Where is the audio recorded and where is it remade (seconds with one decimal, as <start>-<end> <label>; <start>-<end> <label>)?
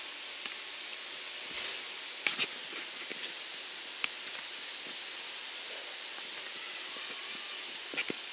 0.0-8.3 recorded